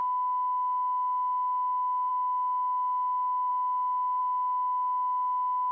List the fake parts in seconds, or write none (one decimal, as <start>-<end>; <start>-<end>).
none